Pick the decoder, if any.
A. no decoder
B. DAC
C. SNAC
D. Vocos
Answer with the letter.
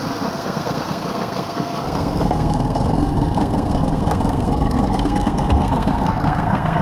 C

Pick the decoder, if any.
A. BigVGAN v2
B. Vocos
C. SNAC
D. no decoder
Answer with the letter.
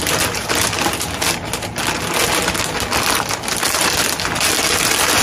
D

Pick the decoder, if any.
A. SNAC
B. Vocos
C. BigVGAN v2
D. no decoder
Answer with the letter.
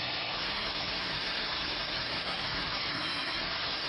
A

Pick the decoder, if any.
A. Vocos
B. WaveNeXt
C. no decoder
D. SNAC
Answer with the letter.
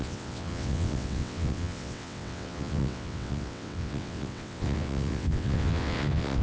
B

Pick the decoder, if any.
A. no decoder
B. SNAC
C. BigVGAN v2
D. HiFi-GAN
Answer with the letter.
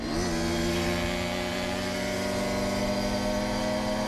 A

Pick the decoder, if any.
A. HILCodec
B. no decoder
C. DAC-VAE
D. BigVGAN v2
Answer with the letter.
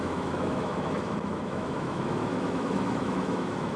C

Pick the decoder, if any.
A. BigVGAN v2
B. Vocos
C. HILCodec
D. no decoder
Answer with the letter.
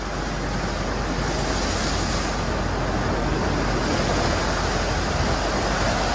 D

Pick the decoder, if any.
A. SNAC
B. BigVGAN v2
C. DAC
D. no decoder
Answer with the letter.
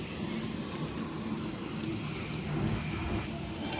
D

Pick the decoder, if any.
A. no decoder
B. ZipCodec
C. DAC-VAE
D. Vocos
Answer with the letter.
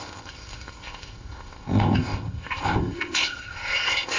B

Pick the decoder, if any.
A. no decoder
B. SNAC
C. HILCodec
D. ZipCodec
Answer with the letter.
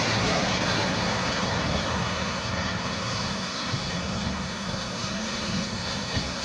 B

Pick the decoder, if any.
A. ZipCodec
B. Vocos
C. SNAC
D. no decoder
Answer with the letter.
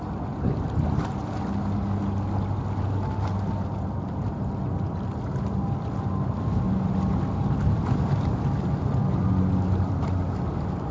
D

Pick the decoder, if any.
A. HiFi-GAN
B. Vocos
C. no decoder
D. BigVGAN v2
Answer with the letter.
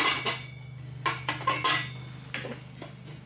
C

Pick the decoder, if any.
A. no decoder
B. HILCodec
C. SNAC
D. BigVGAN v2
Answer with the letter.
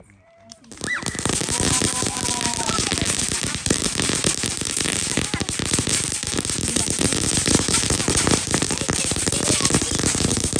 D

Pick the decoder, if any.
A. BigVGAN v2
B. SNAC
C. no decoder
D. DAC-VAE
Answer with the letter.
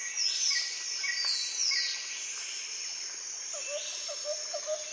C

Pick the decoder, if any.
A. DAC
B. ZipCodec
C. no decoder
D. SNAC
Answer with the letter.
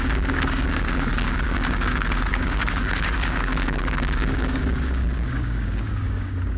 A